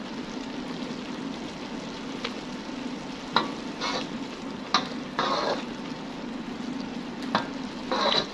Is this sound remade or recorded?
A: recorded